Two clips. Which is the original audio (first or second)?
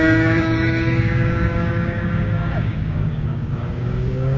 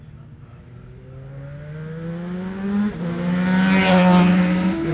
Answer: second